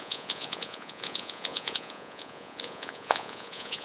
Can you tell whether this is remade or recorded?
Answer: remade